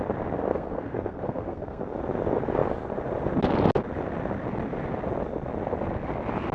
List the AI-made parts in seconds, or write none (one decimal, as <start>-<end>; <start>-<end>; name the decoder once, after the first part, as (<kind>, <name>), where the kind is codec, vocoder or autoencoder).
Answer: 0.5-1.8 (codec, SNAC)

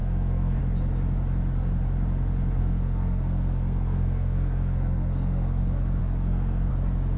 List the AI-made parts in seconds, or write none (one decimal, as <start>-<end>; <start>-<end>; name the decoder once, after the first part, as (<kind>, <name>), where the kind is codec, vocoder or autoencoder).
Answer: 0.0-0.6 (codec, SNAC); 2.6-5.6; 6.0-6.7